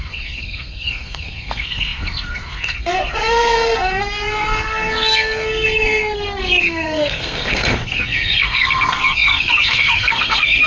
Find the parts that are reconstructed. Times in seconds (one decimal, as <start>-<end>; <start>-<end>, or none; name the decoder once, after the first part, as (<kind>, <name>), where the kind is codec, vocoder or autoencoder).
0.0-10.7 (codec, SNAC)